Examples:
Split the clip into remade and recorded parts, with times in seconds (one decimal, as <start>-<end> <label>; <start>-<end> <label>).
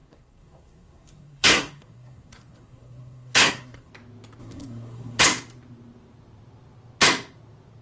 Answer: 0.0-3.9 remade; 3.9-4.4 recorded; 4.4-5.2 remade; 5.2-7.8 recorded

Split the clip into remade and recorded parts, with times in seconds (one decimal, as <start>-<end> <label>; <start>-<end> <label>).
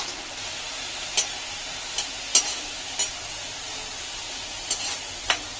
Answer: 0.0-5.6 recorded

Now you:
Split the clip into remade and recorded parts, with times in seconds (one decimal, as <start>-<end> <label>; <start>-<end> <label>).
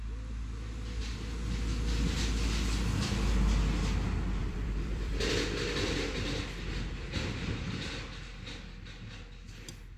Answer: 0.0-4.4 recorded; 4.4-5.3 remade; 5.3-10.0 recorded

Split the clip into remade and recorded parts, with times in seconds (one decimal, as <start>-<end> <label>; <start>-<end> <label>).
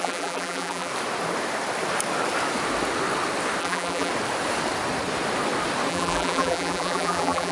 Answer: 0.0-0.9 remade; 0.9-3.6 recorded; 3.6-4.1 remade; 4.1-5.9 recorded; 5.9-7.5 remade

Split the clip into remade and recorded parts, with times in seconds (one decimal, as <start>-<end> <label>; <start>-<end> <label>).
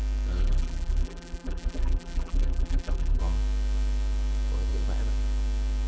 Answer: 0.0-0.4 recorded; 0.4-3.2 remade; 3.2-5.9 recorded